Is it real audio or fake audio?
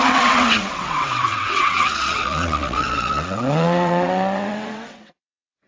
fake